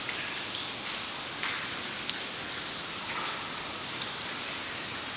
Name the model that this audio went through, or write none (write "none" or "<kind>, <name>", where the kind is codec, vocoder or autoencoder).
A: none